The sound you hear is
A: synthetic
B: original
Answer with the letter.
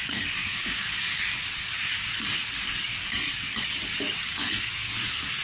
A